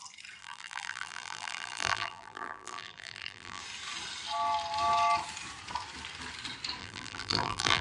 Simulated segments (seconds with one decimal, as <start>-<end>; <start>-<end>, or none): 0.4-3.6; 6.8-7.8